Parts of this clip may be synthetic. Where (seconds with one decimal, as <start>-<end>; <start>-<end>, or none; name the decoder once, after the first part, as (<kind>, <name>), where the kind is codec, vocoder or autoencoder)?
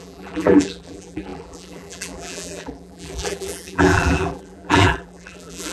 0.0-5.7 (vocoder, BigVGAN v2)